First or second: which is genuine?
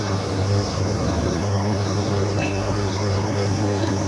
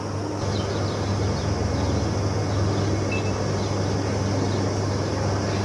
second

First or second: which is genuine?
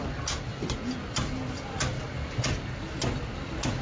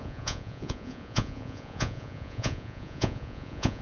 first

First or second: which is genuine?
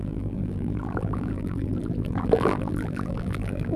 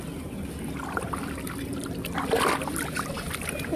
second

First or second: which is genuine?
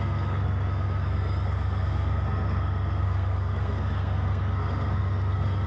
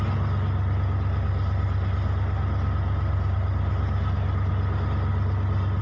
second